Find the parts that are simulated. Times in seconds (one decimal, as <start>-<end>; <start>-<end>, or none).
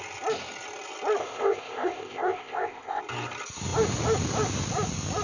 1.2-3.0